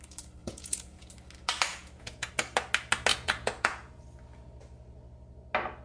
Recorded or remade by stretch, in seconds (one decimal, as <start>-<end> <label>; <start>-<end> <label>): 0.0-0.4 recorded; 0.4-1.1 remade; 1.1-1.7 recorded; 1.7-2.3 remade; 2.3-3.1 recorded; 3.1-4.0 remade; 4.0-5.8 recorded

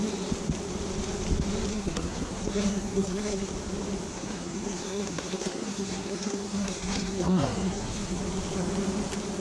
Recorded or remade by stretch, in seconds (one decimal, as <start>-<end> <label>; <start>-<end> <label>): 0.0-1.7 recorded; 1.7-3.5 remade; 3.5-4.1 recorded; 4.1-8.2 remade; 8.2-9.4 recorded

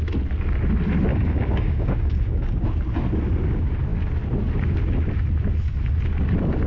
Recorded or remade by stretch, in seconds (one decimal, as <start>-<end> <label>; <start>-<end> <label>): 0.0-1.1 recorded; 1.1-2.6 remade; 2.6-6.7 recorded

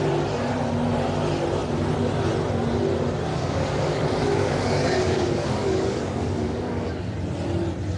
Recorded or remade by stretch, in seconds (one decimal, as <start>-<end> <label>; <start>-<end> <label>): 0.0-3.3 recorded; 3.3-7.1 remade; 7.1-8.0 recorded

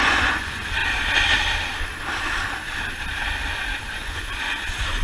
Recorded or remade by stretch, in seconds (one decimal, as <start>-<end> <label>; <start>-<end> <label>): 0.0-0.8 remade; 0.8-3.8 recorded; 3.8-5.0 remade

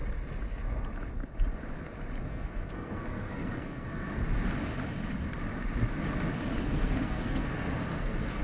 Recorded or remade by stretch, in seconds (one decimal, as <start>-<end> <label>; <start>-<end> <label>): 0.0-2.2 recorded; 2.2-4.2 remade; 4.2-6.6 recorded; 6.6-8.4 remade